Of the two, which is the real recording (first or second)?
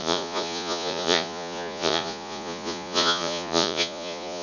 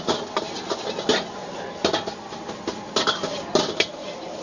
second